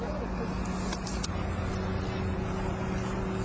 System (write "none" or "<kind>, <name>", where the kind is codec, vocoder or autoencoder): none